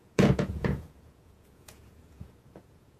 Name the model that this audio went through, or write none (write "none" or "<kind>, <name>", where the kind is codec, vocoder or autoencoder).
vocoder, Vocos